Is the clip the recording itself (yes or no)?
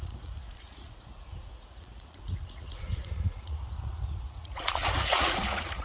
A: no